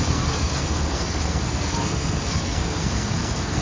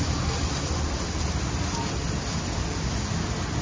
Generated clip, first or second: first